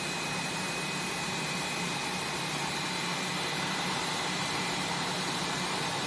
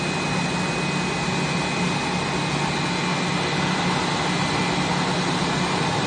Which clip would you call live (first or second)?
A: second